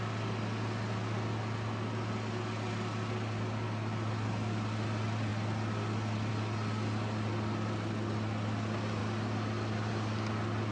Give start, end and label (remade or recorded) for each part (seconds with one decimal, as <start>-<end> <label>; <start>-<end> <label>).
0.0-10.7 recorded